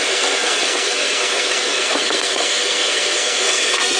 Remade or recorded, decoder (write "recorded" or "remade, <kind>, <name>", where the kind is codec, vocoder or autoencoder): remade, codec, SNAC